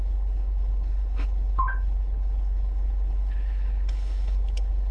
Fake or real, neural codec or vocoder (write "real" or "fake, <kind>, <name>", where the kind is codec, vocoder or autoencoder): fake, codec, HILCodec